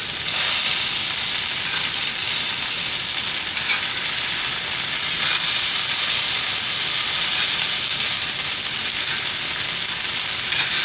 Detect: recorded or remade recorded